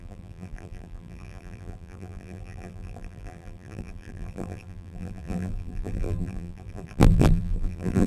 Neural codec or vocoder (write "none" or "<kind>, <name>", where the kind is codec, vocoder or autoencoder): vocoder, BigVGAN v2